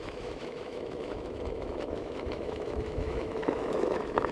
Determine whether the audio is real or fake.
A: fake